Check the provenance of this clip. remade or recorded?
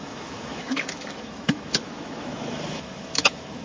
remade